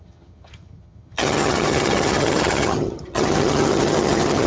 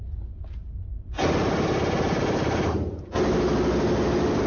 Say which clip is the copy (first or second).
first